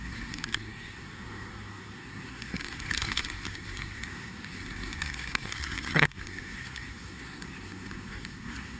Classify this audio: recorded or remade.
remade